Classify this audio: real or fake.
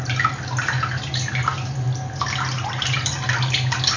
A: real